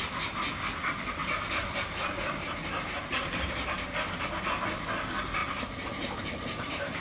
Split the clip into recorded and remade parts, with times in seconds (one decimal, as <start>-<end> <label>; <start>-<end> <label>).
0.0-1.2 recorded; 1.2-4.2 remade; 4.2-5.4 recorded; 5.4-7.0 remade